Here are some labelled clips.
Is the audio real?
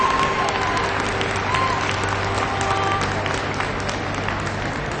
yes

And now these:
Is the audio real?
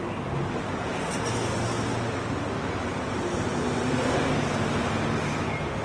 yes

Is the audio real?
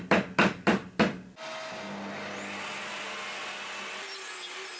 yes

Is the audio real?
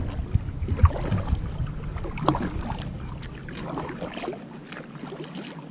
yes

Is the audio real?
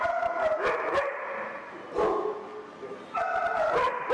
yes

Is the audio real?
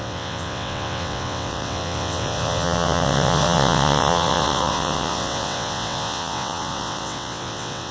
no